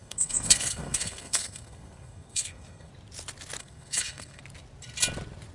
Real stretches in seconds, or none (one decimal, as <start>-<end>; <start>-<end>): 2.9-3.6; 4.4-5.5